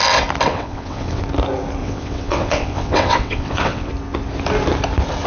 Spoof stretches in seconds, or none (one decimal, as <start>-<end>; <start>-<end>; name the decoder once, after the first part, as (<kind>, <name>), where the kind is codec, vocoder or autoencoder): 0.5-1.2 (vocoder, WaveNeXt); 1.8-3.9

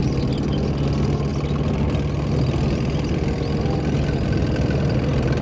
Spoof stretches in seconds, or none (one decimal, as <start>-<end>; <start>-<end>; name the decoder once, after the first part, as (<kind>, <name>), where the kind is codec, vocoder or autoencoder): none

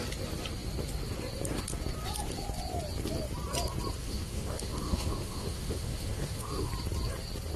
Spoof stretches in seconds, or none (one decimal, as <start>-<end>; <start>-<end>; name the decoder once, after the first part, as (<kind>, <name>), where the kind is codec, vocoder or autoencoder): 4.0-6.7 (autoencoder, DAC-VAE)

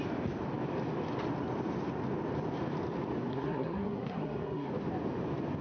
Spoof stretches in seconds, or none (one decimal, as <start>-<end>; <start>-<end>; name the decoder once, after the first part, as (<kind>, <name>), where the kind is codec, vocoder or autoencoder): 3.3-4.7 (codec, SNAC)

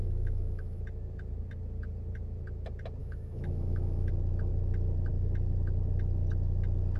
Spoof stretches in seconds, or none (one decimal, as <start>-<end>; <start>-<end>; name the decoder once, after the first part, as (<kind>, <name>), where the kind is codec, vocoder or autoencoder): 0.0-0.8 (autoencoder, DAC-VAE); 3.0-4.1

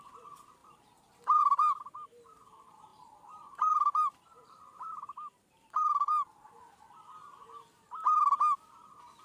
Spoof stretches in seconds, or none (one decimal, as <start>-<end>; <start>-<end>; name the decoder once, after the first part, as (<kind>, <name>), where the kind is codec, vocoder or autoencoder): 0.0-9.2 (vocoder, BigVGAN v2)

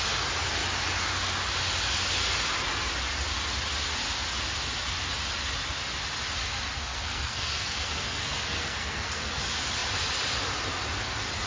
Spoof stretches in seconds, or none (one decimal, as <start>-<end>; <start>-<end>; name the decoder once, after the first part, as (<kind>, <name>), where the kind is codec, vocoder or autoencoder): 6.4-9.4 (codec, SNAC)

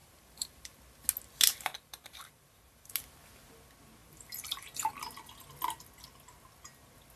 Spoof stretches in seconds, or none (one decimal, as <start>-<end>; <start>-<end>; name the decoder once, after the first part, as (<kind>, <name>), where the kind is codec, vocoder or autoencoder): 0.0-0.8 (vocoder, BigVGAN v2); 1.7-2.9; 4.0-4.9